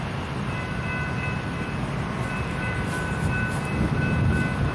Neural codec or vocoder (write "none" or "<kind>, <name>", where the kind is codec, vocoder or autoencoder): none